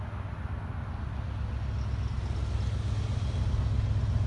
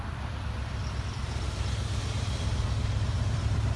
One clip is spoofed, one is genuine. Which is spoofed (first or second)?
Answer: second